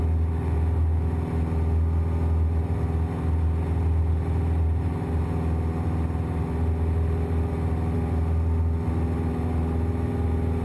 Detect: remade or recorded recorded